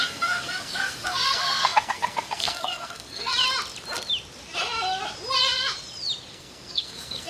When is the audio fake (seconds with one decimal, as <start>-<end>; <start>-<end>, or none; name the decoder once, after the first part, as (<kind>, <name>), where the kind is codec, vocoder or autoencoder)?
0.0-3.3 (codec, SNAC); 6.3-7.3

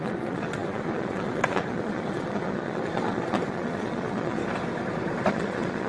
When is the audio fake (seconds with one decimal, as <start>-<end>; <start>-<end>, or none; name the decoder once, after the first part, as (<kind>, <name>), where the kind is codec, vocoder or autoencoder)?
0.0-4.4 (vocoder, Vocos); 5.3-5.9

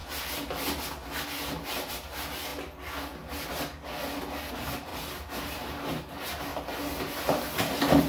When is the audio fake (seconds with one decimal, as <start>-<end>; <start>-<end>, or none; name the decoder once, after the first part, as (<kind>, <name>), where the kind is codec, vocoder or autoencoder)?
1.9-2.5 (vocoder, BigVGAN v2); 4.5-4.9; 5.5-6.5; 7.0-8.1

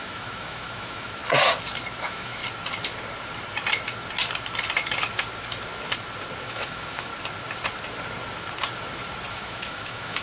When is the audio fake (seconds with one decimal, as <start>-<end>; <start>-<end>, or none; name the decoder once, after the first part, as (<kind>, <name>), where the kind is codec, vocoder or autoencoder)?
0.0-1.2 (autoencoder, DAC-VAE); 2.0-2.4; 6.4-7.1; 9.3-10.2

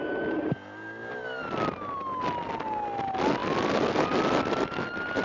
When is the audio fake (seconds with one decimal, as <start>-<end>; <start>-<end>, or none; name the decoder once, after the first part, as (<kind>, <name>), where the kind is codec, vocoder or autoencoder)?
none

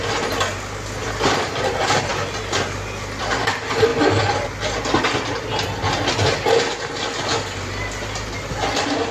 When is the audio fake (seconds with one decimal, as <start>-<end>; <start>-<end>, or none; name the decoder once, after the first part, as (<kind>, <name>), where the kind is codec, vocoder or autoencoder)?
1.0-1.6 (vocoder, BigVGAN v2)

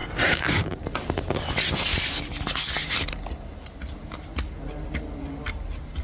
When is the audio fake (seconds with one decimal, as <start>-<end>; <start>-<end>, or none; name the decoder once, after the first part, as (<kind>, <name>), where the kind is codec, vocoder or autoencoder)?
0.0-0.8 (vocoder, BigVGAN v2)

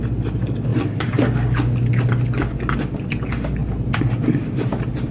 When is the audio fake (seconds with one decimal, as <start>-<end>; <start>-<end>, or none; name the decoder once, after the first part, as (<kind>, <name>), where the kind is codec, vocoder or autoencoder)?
0.7-1.2 (vocoder, BigVGAN v2); 3.6-5.1